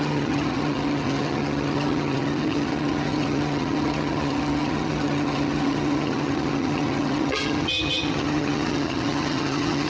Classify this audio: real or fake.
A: fake